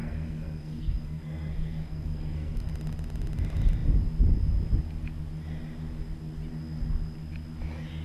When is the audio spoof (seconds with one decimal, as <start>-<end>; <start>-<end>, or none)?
0.0-2.7